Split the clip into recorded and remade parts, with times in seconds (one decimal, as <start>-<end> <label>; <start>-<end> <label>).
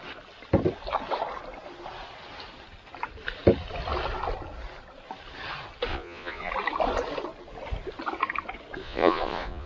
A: 0.0-5.9 recorded; 5.9-6.5 remade; 6.5-8.8 recorded; 8.8-9.7 remade